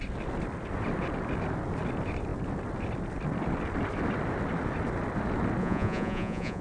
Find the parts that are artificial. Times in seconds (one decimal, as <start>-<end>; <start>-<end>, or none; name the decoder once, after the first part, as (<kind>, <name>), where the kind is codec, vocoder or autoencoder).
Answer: 5.6-6.6 (vocoder, Vocos)

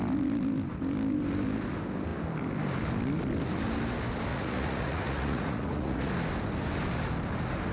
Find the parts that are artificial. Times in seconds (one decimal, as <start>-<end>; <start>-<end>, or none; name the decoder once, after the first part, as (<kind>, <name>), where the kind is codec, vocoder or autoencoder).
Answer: 4.3-6.1 (vocoder, Vocos)

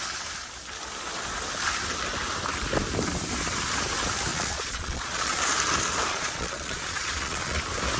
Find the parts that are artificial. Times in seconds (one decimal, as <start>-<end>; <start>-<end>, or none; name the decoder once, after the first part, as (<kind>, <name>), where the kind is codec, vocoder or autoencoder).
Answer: 4.3-5.4 (vocoder, Vocos); 6.1-7.6

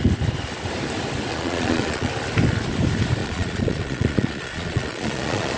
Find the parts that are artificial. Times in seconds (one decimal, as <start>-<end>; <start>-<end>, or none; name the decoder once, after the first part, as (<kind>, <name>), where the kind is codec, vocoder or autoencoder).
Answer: 1.3-2.1 (vocoder, Vocos); 3.2-5.6

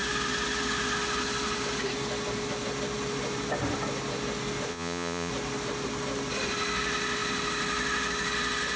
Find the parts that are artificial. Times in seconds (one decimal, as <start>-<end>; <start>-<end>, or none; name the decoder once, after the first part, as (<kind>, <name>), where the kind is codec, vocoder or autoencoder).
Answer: 4.7-5.3 (vocoder, Vocos)

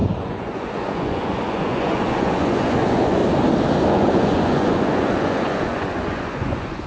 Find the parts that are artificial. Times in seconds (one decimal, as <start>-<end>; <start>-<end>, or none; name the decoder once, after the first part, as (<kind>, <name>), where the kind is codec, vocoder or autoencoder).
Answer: 0.0-3.2 (vocoder, Vocos); 3.9-6.9